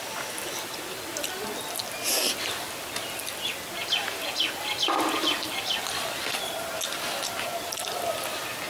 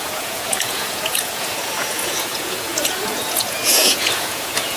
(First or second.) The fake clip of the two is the second